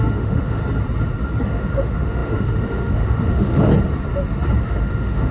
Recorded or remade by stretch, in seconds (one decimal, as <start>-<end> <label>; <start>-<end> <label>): 0.0-0.6 remade; 0.6-1.5 recorded; 1.5-3.7 remade; 3.7-4.6 recorded; 4.6-5.3 remade